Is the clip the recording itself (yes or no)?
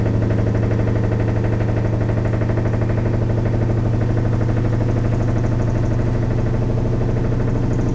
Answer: yes